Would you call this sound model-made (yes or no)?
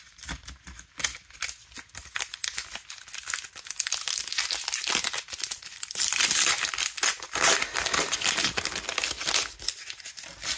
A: no